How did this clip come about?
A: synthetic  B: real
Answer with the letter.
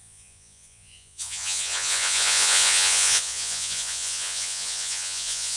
A